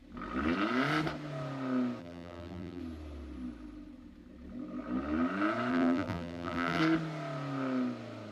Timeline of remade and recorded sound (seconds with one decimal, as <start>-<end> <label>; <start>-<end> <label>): 0.0-2.0 recorded; 2.0-2.8 remade; 2.8-5.7 recorded; 5.7-6.8 remade; 6.8-8.3 recorded